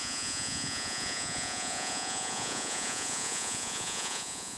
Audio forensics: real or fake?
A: fake